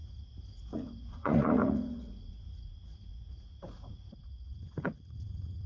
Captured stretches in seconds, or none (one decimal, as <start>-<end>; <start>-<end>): none